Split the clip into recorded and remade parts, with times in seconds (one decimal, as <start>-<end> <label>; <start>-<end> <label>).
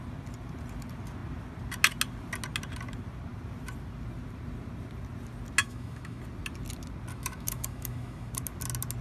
0.0-5.6 recorded; 5.6-6.2 remade; 6.2-7.1 recorded; 7.1-8.3 remade; 8.3-9.0 recorded